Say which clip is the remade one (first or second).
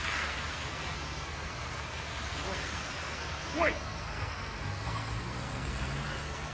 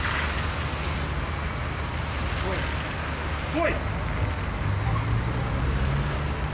first